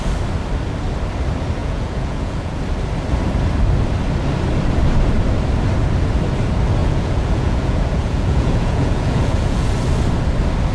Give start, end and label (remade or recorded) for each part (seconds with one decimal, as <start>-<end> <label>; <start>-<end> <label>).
0.0-1.6 recorded; 1.6-2.6 remade; 2.6-6.8 recorded; 6.8-9.7 remade; 9.7-10.7 recorded